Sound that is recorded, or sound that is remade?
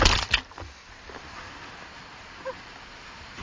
recorded